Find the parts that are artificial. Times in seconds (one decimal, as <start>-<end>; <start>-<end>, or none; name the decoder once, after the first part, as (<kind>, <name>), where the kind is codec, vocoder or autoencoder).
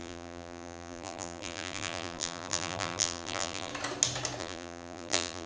0.0-3.7 (vocoder, BigVGAN v2); 4.4-5.5